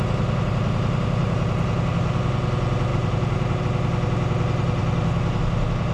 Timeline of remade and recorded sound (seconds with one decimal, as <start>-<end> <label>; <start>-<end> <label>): 0.0-2.9 recorded; 2.9-3.6 remade; 3.6-5.9 recorded